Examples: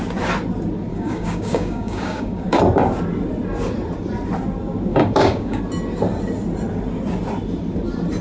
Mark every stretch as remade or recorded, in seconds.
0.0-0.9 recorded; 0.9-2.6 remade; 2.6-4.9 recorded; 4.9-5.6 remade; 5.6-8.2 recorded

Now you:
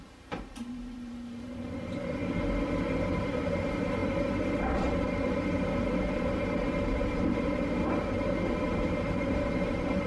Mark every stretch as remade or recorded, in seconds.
0.0-2.2 remade; 2.2-3.0 recorded; 3.0-10.1 remade

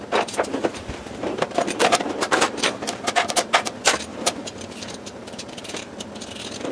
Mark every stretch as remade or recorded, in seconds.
0.0-0.7 recorded; 0.7-3.0 remade; 3.0-4.1 recorded; 4.1-5.9 remade; 5.9-6.7 recorded